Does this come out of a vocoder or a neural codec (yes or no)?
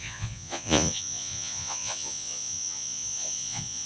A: yes